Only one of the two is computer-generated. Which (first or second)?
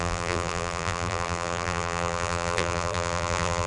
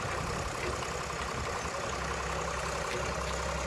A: first